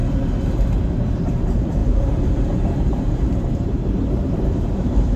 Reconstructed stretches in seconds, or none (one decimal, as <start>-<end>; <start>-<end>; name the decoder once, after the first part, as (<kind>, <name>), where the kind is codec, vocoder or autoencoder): 1.3-5.2 (vocoder, BigVGAN v2)